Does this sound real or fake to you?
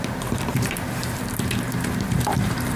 fake